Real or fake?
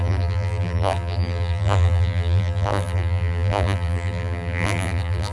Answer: fake